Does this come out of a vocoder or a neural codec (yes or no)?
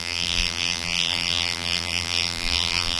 yes